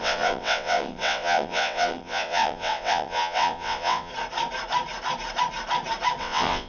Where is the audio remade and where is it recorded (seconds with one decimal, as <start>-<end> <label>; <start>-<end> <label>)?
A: 0.0-4.1 remade; 4.1-6.2 recorded; 6.2-6.7 remade